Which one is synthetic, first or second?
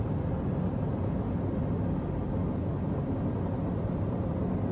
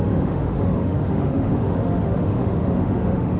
second